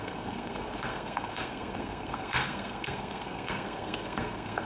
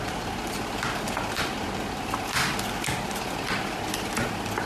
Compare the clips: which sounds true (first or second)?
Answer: second